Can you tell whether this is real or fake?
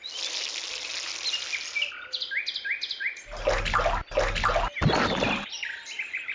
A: real